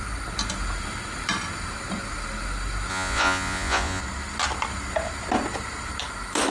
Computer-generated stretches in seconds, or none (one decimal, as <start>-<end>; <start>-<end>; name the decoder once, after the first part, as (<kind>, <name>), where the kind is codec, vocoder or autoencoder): 2.9-4.0 (vocoder, Vocos)